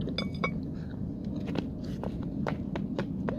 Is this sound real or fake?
real